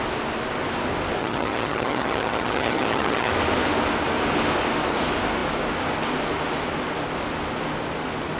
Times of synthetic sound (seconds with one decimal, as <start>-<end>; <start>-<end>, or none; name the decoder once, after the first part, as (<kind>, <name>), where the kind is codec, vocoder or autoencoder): 1.2-3.3 (vocoder, HiFi-GAN)